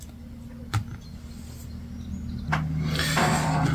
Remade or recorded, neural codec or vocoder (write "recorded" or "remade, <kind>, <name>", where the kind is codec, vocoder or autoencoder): recorded